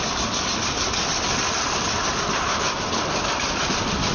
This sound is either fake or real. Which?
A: real